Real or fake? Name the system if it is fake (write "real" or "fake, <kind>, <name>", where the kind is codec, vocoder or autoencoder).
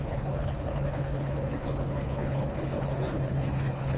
fake, codec, HILCodec